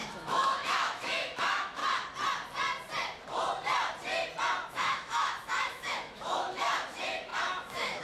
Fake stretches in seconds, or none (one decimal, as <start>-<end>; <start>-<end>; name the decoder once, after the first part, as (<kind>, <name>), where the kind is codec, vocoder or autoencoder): 0.0-1.8 (autoencoder, DAC-VAE); 4.7-8.0